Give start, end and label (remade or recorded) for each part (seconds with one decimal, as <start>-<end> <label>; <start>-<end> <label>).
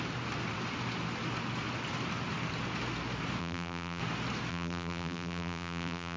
0.0-3.4 recorded; 3.4-4.0 remade; 4.0-4.5 recorded; 4.5-6.2 remade